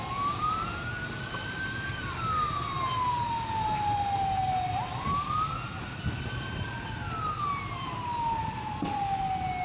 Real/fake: real